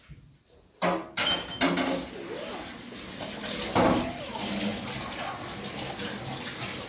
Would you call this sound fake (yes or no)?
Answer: no